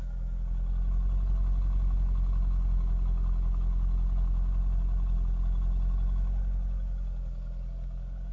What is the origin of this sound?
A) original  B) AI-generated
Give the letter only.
A